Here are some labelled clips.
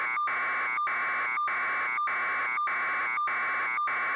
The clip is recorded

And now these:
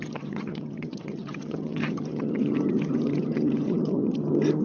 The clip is remade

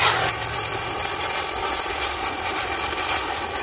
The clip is recorded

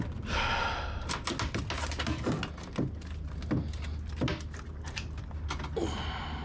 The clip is recorded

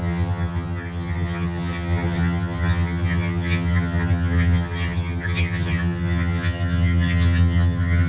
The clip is remade